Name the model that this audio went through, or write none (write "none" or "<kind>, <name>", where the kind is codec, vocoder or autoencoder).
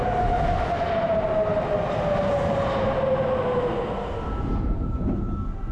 none